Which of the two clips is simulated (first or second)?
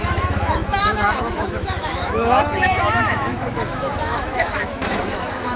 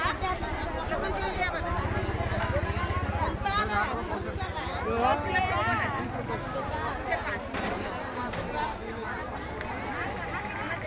first